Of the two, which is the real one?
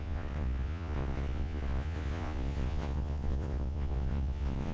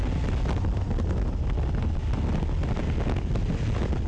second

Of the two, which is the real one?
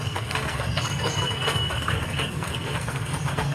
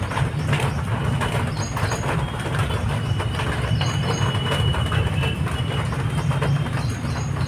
second